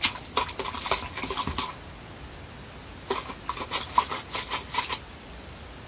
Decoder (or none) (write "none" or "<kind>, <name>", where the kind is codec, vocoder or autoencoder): none